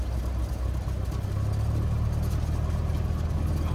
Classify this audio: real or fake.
real